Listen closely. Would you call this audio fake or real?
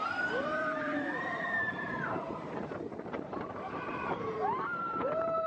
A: fake